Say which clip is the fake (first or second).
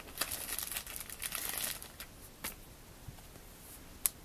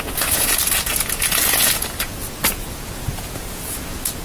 second